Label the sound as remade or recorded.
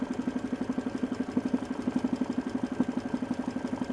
recorded